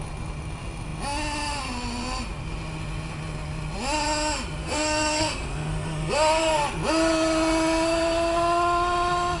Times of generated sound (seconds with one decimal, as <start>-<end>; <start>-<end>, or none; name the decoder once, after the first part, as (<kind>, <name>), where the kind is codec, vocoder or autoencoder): 4.6-5.7 (codec, SNAC)